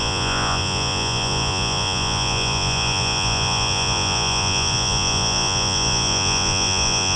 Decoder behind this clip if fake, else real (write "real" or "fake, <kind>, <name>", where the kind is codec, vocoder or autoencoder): fake, vocoder, Vocos